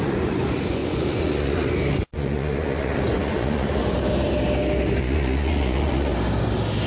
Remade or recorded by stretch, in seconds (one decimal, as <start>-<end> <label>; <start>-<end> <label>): 0.0-3.8 remade; 3.8-5.0 recorded; 5.0-6.1 remade; 6.1-6.9 recorded